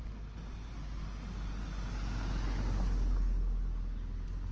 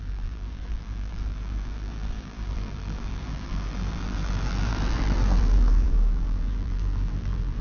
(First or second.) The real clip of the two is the first